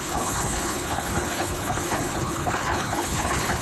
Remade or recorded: remade